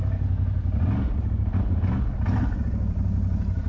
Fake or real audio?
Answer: real